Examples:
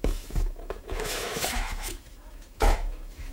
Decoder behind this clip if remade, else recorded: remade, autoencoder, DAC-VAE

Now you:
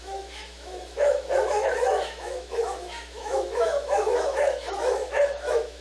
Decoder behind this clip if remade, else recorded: remade, autoencoder, DAC-VAE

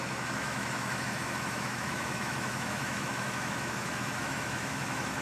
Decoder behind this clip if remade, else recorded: remade, autoencoder, DAC-VAE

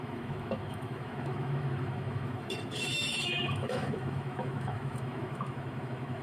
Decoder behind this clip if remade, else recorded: remade, autoencoder, DAC-VAE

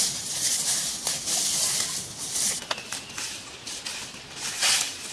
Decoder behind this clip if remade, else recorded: recorded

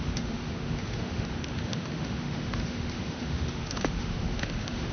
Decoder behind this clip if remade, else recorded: remade, autoencoder, DAC-VAE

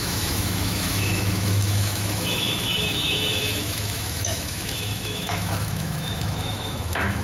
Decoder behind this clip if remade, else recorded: remade, autoencoder, DAC-VAE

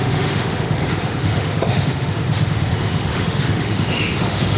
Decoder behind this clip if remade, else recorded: remade, autoencoder, DAC-VAE